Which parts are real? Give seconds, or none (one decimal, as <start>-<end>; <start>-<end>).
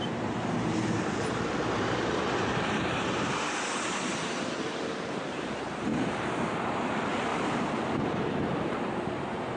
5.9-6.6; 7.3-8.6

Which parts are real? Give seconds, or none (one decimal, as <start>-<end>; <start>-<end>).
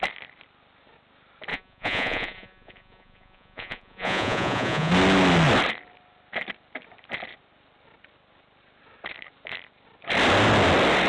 0.0-1.5; 4.9-11.1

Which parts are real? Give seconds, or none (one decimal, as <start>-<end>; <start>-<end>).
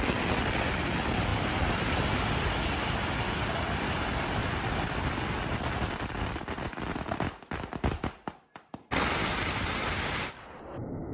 0.0-1.3; 2.6-4.4; 8.3-11.1